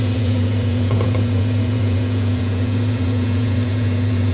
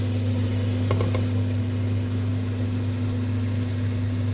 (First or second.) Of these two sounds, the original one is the second